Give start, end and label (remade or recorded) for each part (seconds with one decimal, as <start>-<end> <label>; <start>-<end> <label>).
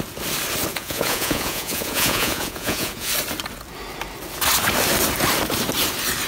0.0-0.7 recorded; 0.7-3.1 remade; 3.1-6.3 recorded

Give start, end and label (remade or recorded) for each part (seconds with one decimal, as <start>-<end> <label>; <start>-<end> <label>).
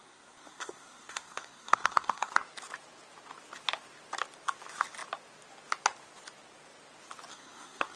0.0-2.3 remade; 2.3-7.3 recorded; 7.3-8.0 remade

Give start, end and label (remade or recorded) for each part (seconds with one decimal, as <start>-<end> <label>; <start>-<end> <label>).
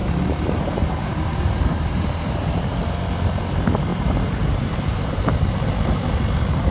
0.0-2.3 remade; 2.3-3.9 recorded; 3.9-5.2 remade; 5.2-6.7 recorded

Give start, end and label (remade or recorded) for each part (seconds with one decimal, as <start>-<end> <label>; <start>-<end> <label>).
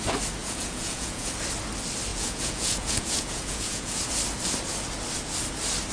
0.0-0.4 recorded; 0.4-1.3 remade; 1.3-2.1 recorded; 2.1-4.1 remade; 4.1-5.9 recorded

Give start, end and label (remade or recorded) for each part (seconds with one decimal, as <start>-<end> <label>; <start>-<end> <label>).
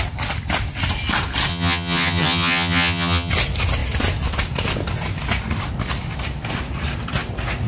0.0-1.5 recorded; 1.5-3.3 remade; 3.3-7.7 recorded